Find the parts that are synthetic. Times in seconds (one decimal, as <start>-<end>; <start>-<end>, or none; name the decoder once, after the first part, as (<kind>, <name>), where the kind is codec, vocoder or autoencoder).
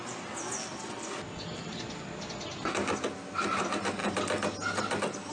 none